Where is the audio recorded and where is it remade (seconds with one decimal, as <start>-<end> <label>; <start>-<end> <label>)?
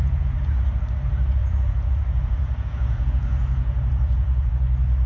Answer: 0.0-0.6 remade; 0.6-1.4 recorded; 1.4-4.5 remade; 4.5-5.1 recorded